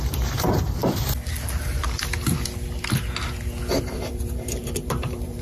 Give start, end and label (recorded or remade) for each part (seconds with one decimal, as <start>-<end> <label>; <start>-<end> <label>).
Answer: 0.0-0.8 remade; 0.8-3.8 recorded; 3.8-5.4 remade